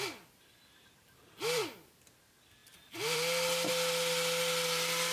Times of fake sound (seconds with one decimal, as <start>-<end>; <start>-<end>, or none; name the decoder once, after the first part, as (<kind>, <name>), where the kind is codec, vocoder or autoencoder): none